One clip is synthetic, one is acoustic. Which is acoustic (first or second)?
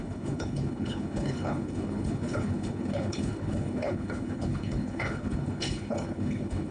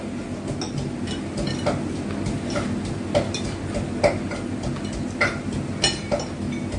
second